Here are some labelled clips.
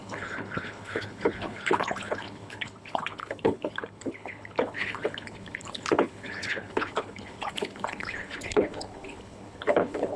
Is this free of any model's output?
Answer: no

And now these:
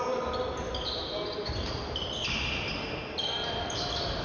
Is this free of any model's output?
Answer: yes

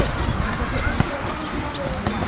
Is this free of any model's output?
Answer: yes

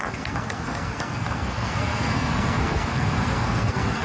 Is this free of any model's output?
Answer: no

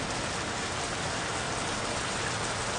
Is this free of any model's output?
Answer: yes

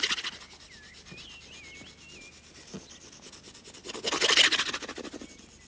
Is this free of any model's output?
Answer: yes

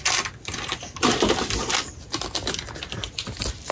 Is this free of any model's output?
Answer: yes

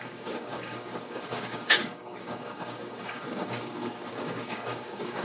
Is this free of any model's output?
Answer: no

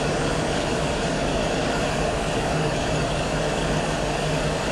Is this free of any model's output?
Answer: no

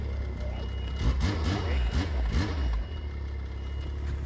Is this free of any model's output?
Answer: yes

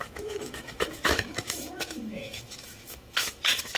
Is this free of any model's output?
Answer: no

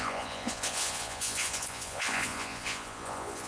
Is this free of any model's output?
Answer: no